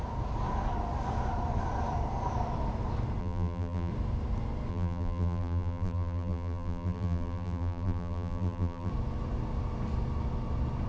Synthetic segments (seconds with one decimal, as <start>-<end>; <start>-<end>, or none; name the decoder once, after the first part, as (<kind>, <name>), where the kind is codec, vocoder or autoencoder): 3.2-3.9 (vocoder, BigVGAN v2); 4.7-8.9